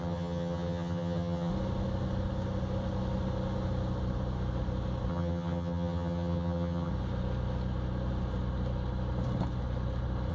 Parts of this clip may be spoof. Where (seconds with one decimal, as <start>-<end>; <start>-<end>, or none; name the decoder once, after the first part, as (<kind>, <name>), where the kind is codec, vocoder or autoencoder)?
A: 0.0-1.5 (vocoder, HiFi-GAN); 5.1-6.9